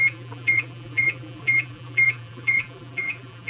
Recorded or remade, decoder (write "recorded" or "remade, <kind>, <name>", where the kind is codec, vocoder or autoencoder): remade, vocoder, BigVGAN v2